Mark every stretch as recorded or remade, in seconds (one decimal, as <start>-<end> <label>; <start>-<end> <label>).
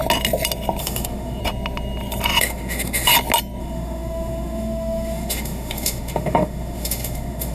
0.0-0.8 recorded; 0.8-1.4 remade; 1.4-2.4 recorded; 2.4-3.1 remade; 3.1-3.6 recorded; 3.6-7.5 remade